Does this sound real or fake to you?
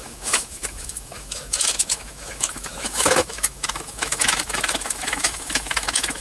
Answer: fake